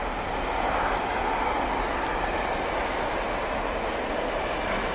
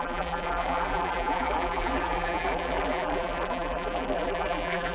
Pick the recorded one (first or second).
first